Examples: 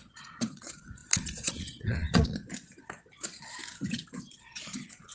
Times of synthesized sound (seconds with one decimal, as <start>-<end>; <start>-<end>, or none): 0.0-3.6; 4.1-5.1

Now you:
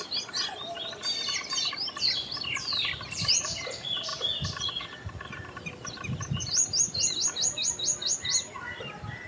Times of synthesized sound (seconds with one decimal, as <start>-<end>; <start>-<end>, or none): none

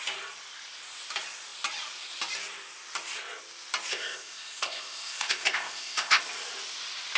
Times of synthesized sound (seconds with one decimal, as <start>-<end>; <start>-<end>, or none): 3.9-6.2

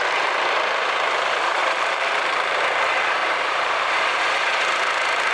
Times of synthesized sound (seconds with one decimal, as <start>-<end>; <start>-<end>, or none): 1.6-2.6; 3.2-4.6

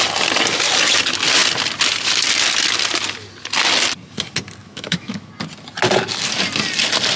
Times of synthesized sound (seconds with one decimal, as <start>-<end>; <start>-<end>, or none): 4.6-5.3

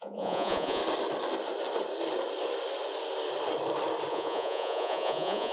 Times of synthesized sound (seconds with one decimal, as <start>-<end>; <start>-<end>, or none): 0.0-0.8; 4.1-5.5

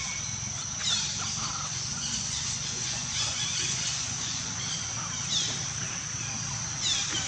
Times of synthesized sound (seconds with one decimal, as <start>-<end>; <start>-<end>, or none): 1.7-5.0